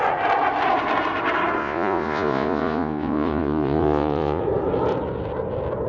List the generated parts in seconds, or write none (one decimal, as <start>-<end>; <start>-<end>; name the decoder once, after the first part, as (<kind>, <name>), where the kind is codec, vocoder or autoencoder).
1.6-4.4 (vocoder, Vocos)